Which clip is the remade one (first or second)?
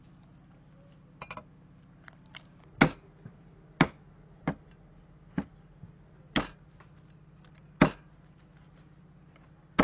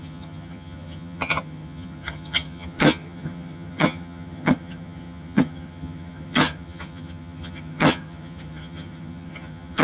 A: second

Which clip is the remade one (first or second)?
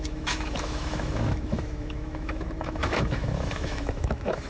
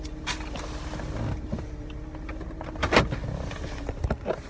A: first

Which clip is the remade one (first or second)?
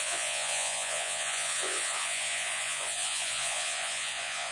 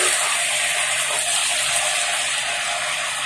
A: first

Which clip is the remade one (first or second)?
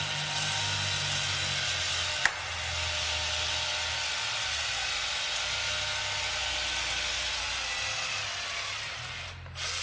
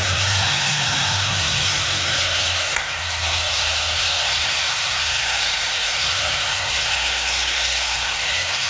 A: second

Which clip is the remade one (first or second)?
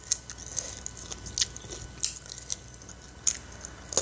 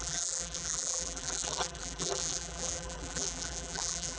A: second